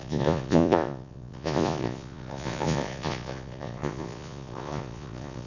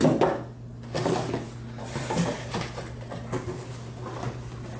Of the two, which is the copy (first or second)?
first